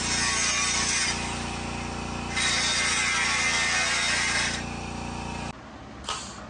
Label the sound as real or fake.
real